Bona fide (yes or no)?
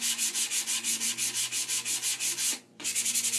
no